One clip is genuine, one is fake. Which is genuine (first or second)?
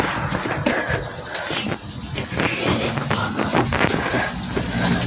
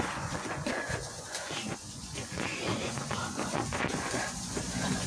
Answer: first